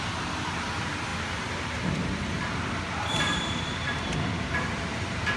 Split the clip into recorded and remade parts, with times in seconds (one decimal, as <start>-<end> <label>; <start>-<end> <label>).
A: 0.0-5.4 remade